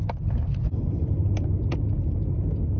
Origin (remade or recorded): recorded